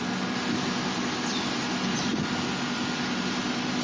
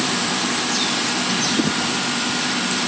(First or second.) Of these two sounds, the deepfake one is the second